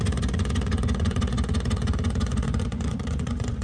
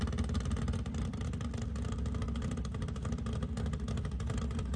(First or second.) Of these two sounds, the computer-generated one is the first